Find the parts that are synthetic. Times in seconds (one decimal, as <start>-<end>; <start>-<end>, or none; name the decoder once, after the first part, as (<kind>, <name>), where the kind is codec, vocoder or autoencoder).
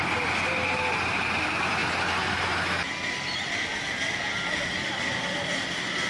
none